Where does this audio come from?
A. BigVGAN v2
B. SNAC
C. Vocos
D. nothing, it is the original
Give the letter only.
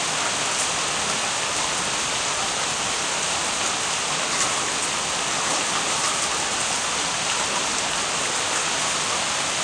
D